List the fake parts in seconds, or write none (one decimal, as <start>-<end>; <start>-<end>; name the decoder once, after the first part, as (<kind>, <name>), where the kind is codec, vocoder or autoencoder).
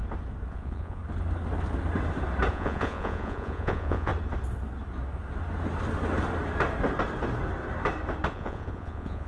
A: 0.5-1.0 (vocoder, Vocos); 2.5-4.1; 8.3-9.3